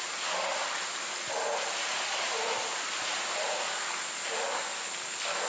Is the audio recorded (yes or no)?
yes